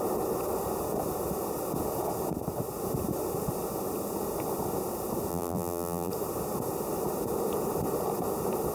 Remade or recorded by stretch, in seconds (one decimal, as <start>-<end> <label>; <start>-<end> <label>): 0.0-5.3 recorded; 5.3-6.1 remade; 6.1-8.7 recorded